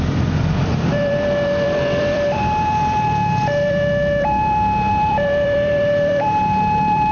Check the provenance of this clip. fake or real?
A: fake